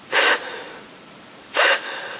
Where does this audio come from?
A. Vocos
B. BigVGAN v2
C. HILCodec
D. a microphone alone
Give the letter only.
D